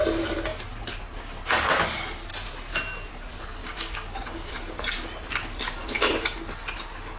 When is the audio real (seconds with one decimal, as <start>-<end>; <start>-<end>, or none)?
0.0-3.6; 4.5-7.2

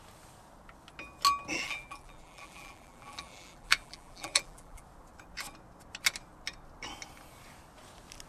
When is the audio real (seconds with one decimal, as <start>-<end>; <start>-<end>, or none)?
0.0-1.5; 4.8-8.3

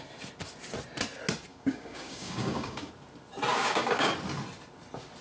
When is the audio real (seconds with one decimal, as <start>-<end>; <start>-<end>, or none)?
0.0-1.5; 2.9-3.5; 4.1-5.2

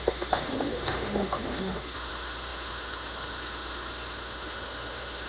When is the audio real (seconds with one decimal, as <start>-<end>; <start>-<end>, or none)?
none

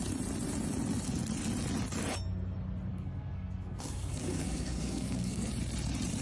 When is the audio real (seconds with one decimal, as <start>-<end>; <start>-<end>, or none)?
0.0-2.9; 5.5-6.2

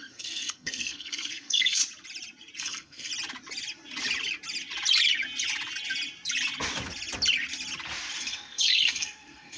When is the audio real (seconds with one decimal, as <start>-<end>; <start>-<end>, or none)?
1.8-2.6; 3.1-8.2

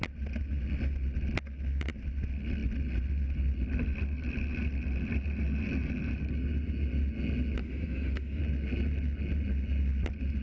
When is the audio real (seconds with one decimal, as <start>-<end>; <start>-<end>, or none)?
0.0-7.6; 8.4-10.4